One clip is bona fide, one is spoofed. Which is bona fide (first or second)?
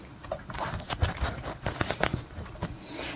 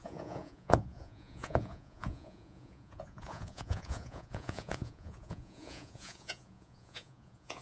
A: first